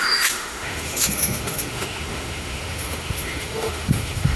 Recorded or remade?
remade